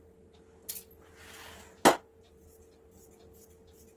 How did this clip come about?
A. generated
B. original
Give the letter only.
B